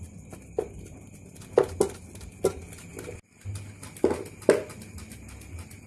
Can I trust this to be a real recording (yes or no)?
yes